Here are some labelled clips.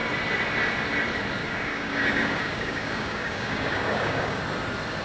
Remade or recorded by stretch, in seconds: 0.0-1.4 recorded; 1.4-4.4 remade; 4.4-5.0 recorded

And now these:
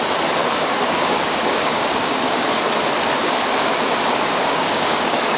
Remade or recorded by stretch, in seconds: 0.0-0.4 recorded; 0.4-2.6 remade; 2.6-3.2 recorded; 3.2-5.4 remade